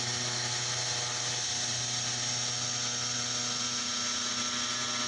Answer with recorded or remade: recorded